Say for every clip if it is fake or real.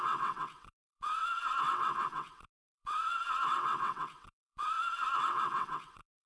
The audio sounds fake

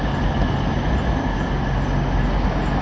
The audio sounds real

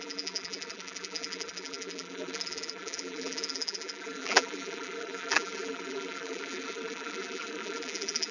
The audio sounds fake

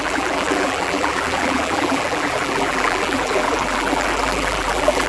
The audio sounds fake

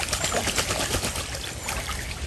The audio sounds real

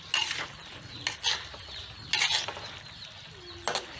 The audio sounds real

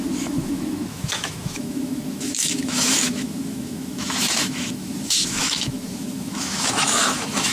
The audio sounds fake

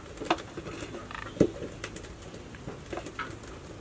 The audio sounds real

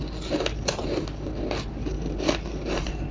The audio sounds real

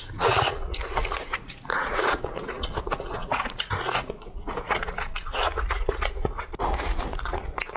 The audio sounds fake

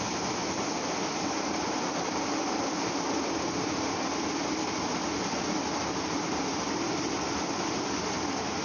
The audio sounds real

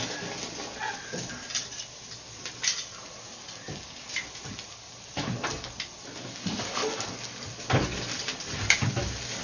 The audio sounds real